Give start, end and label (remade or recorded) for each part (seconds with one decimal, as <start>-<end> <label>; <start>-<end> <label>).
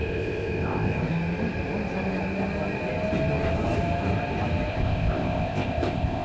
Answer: 0.0-1.1 remade; 1.1-4.7 recorded; 4.7-6.2 remade